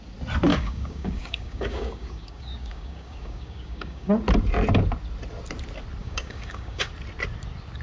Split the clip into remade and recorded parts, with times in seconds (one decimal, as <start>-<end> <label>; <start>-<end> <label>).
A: 0.0-0.5 recorded; 0.5-4.1 remade; 4.1-6.0 recorded; 6.0-6.9 remade; 6.9-7.8 recorded